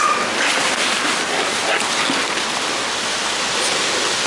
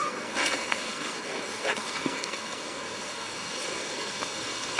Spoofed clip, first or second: second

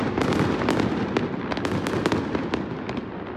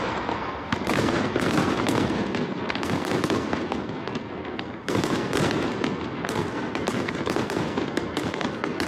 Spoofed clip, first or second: second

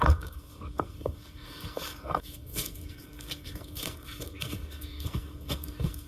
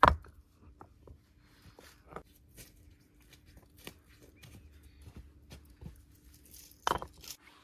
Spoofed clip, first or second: first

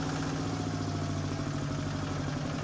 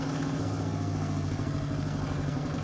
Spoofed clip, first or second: second